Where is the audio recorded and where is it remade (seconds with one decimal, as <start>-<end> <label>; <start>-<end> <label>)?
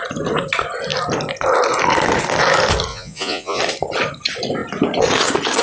0.0-2.9 recorded; 2.9-3.6 remade; 3.6-5.6 recorded